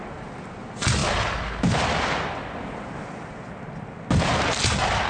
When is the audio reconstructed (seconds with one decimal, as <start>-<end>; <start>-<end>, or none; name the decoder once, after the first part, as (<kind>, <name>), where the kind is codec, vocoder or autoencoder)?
none